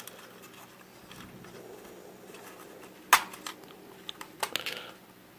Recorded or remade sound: recorded